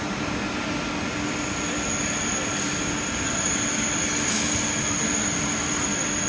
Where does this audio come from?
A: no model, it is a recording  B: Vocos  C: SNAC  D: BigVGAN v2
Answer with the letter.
A